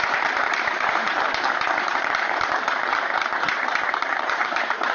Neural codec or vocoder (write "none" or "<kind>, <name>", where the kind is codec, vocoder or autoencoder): vocoder, BigVGAN v2